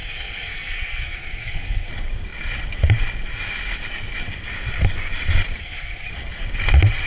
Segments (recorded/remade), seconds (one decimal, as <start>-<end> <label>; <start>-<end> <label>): 0.0-1.9 remade; 1.9-5.6 recorded; 5.6-6.1 remade; 6.1-7.1 recorded